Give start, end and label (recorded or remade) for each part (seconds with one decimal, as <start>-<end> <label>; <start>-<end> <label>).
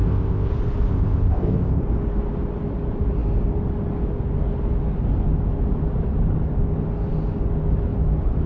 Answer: 0.0-0.5 remade; 0.5-0.9 recorded; 0.9-1.8 remade; 1.8-8.5 recorded